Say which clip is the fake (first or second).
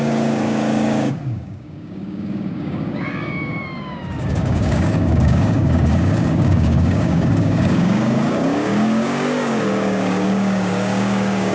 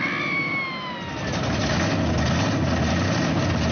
first